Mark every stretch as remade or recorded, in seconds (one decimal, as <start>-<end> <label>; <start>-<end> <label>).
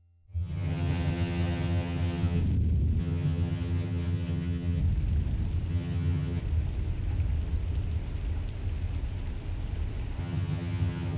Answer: 0.0-2.4 remade; 2.4-3.0 recorded; 3.0-4.8 remade; 4.8-5.7 recorded; 5.7-6.4 remade; 6.4-10.2 recorded; 10.2-11.2 remade